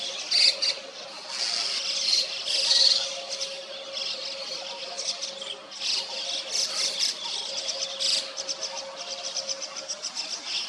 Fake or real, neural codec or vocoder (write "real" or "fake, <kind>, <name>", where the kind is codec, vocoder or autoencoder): real